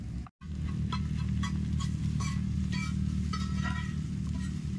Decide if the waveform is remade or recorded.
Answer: recorded